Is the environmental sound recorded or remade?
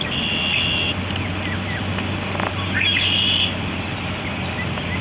recorded